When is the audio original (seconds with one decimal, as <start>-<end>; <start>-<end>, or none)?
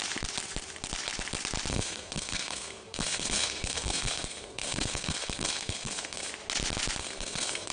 0.0-1.7; 6.3-7.0